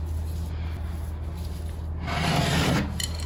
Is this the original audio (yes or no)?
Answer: yes